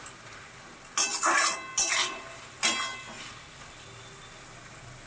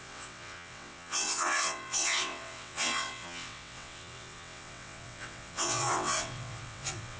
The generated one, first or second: second